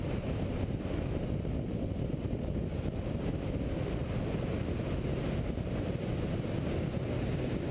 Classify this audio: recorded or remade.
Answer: recorded